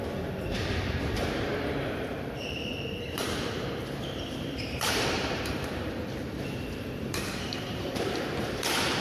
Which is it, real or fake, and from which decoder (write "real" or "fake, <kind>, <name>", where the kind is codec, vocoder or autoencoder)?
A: fake, vocoder, BigVGAN v2